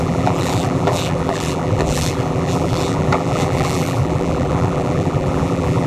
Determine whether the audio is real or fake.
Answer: fake